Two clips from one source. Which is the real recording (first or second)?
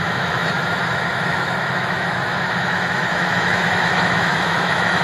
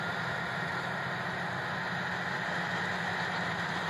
second